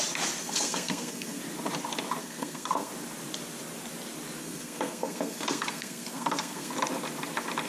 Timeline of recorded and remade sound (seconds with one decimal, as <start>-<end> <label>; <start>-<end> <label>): 0.0-0.4 recorded; 0.4-1.4 remade; 1.4-2.2 recorded; 2.2-2.9 remade; 2.9-4.4 recorded; 4.4-6.7 remade; 6.7-7.7 recorded